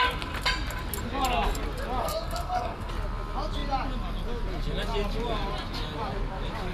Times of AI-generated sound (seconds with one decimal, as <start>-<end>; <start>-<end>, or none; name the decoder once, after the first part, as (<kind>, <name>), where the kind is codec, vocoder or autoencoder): 2.0-2.9 (codec, SNAC)